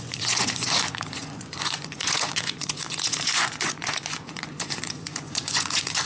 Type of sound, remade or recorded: remade